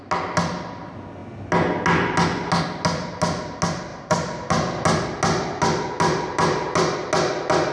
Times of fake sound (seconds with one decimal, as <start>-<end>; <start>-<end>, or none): none